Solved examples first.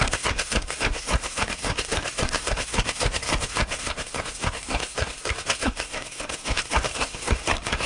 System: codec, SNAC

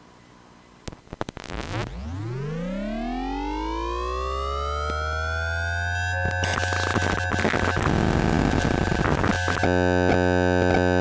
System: none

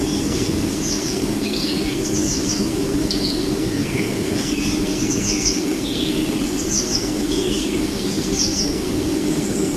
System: codec, SNAC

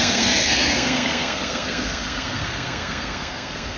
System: codec, SNAC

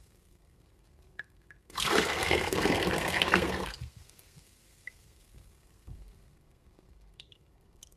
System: codec, SNAC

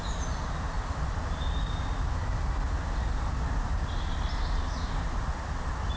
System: none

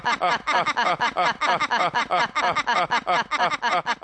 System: none